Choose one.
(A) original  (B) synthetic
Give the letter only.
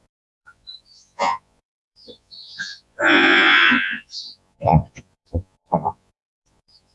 B